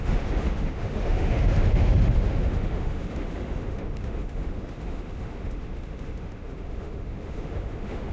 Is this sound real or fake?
fake